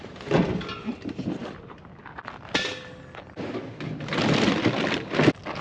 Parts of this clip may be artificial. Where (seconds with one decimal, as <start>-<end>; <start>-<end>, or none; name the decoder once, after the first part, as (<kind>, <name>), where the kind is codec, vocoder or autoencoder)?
none